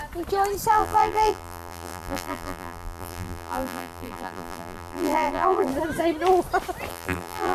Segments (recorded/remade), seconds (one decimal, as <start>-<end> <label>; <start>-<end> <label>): 0.0-0.7 recorded; 0.7-5.7 remade; 5.7-6.9 recorded; 6.9-7.5 remade